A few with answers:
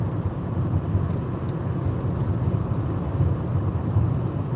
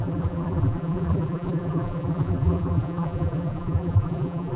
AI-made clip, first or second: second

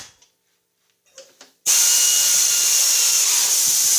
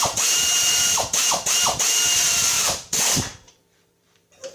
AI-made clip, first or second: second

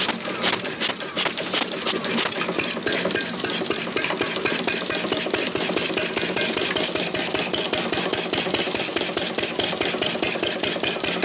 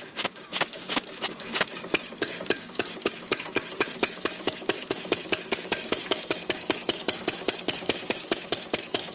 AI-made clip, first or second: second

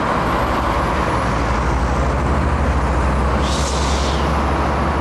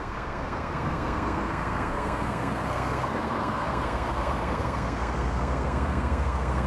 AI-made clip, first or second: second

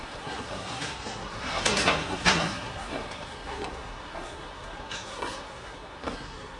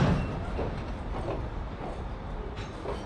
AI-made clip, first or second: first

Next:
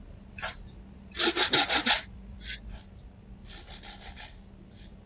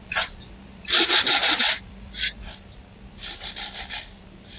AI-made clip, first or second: second